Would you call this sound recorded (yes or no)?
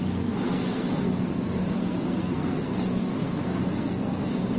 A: no